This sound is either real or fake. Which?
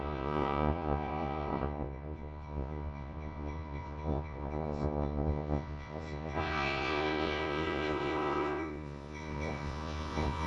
fake